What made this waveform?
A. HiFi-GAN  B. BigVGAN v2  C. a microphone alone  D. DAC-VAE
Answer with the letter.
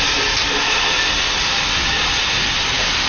C